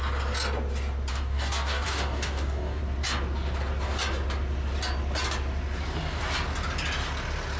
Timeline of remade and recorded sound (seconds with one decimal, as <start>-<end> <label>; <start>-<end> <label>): 0.0-1.1 recorded; 1.1-2.8 remade; 2.8-7.6 recorded